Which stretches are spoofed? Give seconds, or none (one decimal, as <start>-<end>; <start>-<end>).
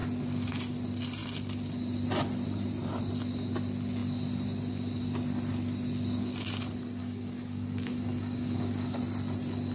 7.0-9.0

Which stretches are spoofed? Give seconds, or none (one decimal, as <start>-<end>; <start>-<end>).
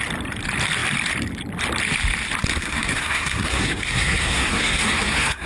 2.6-5.5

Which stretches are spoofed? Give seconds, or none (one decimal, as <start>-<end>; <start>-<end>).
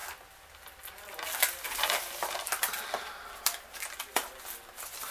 none